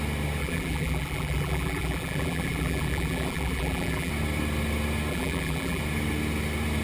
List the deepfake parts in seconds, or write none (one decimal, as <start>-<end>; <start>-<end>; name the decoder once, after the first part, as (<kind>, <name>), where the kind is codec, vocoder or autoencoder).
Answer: 0.4-4.1 (vocoder, BigVGAN v2); 5.1-5.8